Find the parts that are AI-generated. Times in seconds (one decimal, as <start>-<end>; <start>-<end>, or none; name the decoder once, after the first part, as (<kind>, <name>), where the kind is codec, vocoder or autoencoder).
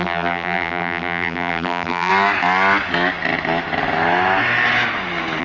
0.0-2.1 (vocoder, BigVGAN v2)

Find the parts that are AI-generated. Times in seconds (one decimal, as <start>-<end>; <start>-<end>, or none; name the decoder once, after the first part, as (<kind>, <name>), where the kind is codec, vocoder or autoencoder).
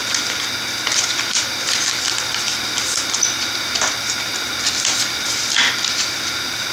none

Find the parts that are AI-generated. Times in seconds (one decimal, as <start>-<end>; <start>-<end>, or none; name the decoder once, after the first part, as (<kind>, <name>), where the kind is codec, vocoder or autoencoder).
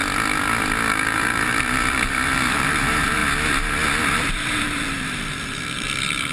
0.9-3.2 (vocoder, BigVGAN v2); 4.3-6.3